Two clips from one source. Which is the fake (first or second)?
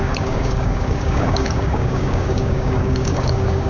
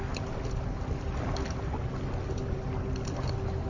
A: first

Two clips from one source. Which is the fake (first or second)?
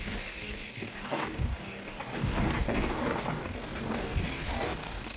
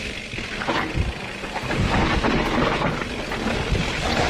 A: first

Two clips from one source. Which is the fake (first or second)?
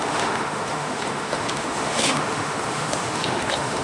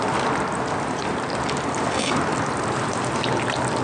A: first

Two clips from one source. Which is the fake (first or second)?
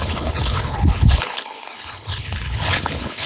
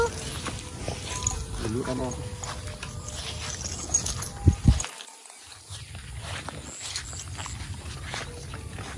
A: first